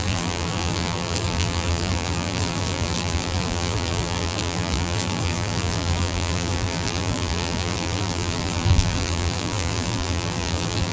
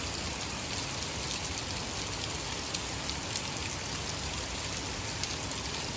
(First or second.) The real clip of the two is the second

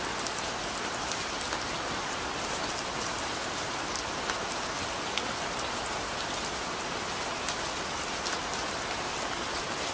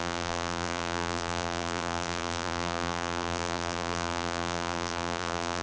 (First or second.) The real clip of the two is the first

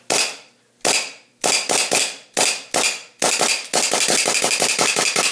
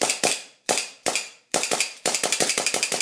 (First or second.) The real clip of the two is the first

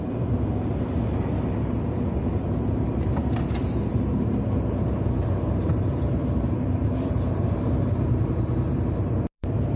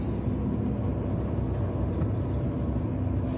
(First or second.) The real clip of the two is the second